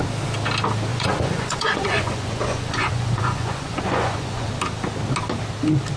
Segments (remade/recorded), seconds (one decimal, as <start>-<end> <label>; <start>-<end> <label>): 0.0-0.9 recorded; 0.9-4.5 remade; 4.5-6.0 recorded

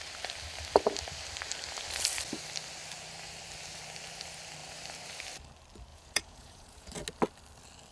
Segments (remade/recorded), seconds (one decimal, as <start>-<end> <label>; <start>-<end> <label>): 0.0-5.9 recorded; 5.9-6.9 remade; 6.9-7.9 recorded

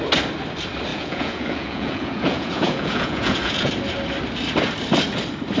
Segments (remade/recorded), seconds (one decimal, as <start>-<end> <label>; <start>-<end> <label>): 0.0-0.9 recorded; 0.9-3.7 remade; 3.7-5.6 recorded

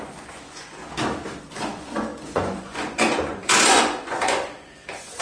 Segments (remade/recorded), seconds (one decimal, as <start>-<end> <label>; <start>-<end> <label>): 0.0-0.8 remade; 0.8-1.4 recorded; 1.4-5.2 remade

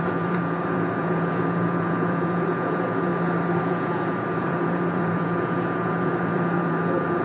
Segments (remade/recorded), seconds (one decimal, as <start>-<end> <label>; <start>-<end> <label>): 0.0-3.1 remade; 3.1-3.6 recorded; 3.6-7.2 remade

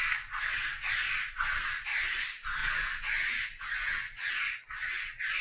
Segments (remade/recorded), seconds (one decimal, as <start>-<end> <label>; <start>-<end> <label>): 0.0-2.6 recorded; 2.6-4.3 remade; 4.3-5.4 recorded